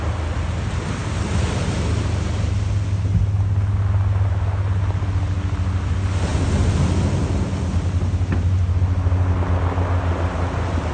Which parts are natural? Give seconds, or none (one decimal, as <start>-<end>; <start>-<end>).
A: 0.0-10.9